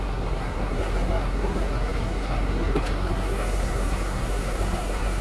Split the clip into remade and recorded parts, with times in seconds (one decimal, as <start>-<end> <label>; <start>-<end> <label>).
0.0-5.2 remade

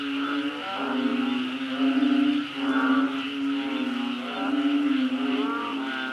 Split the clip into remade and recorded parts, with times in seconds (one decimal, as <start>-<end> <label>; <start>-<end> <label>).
0.0-6.1 recorded

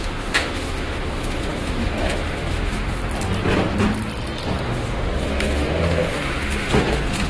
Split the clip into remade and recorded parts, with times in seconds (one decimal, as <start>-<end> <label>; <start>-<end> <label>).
0.0-3.0 remade; 3.0-4.6 recorded; 4.6-7.3 remade

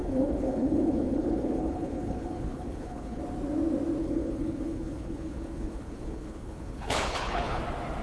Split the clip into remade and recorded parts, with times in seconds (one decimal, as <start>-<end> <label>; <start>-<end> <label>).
0.0-3.2 remade; 3.2-4.0 recorded; 4.0-7.6 remade; 7.6-8.0 recorded

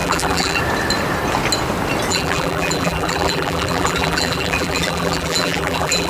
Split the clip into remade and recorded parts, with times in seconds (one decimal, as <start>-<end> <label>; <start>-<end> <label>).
0.0-0.6 remade; 0.6-2.1 recorded; 2.1-6.1 remade

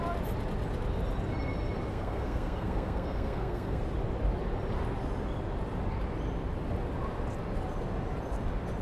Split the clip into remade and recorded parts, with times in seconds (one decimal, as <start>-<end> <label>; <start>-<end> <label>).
0.0-1.9 recorded; 1.9-3.8 remade; 3.8-8.8 recorded